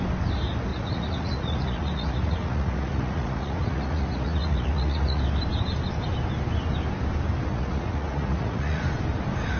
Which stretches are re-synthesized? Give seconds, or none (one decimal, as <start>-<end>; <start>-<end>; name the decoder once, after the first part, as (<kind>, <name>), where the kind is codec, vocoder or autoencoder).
0.7-5.2 (vocoder, Vocos); 7.5-8.8